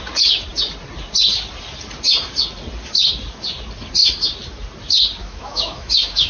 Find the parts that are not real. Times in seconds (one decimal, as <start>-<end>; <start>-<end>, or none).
5.2-6.3